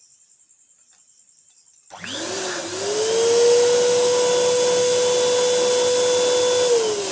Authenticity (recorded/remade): recorded